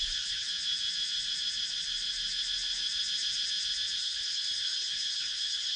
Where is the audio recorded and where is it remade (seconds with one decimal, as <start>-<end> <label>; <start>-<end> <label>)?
0.0-0.5 remade; 0.5-4.0 recorded; 4.0-5.8 remade